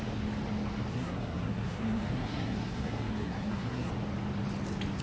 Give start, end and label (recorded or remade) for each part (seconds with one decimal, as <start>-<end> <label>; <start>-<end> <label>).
0.0-0.9 recorded; 0.9-3.9 remade; 3.9-5.0 recorded